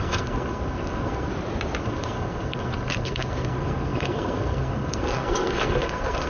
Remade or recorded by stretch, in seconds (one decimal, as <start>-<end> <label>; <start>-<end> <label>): 0.0-1.3 remade; 1.3-1.8 recorded; 1.8-6.3 remade

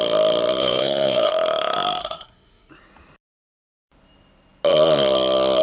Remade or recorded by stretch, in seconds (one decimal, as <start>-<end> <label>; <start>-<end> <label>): 0.0-0.6 recorded; 0.6-1.3 remade; 1.3-2.0 recorded; 2.0-2.7 remade; 2.7-5.6 recorded

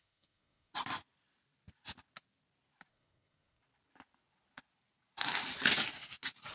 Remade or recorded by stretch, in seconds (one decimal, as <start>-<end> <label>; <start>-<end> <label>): 0.0-0.7 remade; 0.7-2.9 recorded; 2.9-3.6 remade; 3.6-6.5 recorded

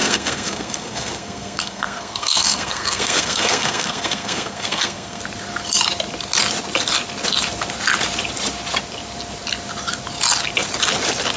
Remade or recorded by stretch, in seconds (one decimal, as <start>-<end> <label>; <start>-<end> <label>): 0.0-5.2 remade; 5.2-11.4 recorded

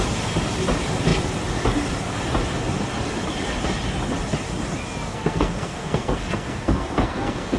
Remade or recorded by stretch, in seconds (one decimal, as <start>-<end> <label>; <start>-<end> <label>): 0.0-5.1 recorded; 5.1-7.6 remade